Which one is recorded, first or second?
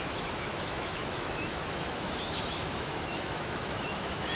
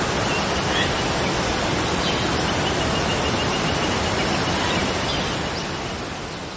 second